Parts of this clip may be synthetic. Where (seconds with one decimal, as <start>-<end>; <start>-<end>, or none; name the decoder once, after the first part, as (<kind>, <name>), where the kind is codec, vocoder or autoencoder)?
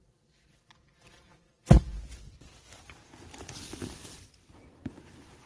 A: none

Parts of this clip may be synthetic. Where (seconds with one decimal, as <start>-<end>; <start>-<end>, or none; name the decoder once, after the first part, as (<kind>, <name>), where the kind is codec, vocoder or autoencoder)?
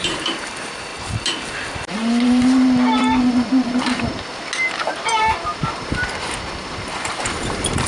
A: 0.0-0.9 (vocoder, BigVGAN v2); 1.9-4.1; 4.8-7.9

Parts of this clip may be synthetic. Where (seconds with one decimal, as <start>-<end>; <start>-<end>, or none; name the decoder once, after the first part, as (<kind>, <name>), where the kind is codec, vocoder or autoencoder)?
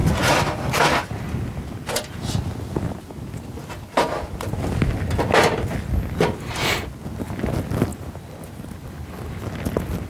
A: 7.9-8.9 (vocoder, BigVGAN v2)